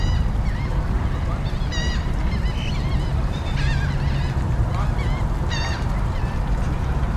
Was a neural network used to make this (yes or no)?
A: no